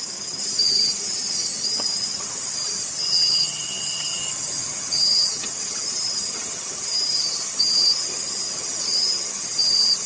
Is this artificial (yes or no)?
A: yes